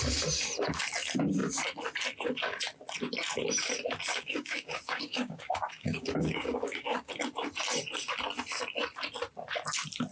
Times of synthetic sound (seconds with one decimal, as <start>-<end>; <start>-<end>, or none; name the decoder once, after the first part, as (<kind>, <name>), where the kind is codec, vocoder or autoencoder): 4.1-7.1 (codec, DAC)